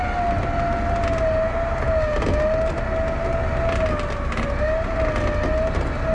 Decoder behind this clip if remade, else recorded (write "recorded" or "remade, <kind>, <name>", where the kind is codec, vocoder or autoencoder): recorded